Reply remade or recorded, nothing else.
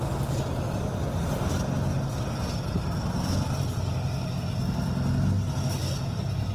recorded